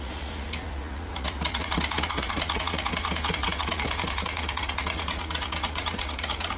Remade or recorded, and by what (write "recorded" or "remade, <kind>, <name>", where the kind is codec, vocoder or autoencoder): remade, vocoder, Vocos